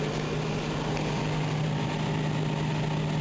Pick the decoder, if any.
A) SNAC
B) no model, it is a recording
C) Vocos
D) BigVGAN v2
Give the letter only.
B